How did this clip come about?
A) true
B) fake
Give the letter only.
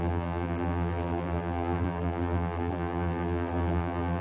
B